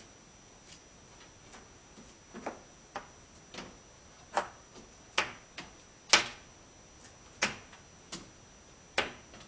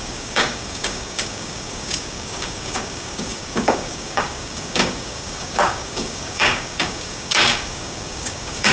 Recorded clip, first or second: first